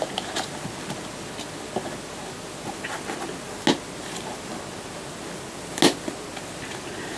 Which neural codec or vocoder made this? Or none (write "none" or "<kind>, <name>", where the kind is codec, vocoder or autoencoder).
none